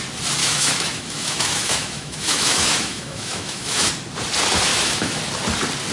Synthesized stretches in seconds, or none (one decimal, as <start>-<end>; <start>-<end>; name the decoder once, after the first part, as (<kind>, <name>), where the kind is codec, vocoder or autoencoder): 0.4-3.9 (autoencoder, DAC-VAE); 4.7-5.2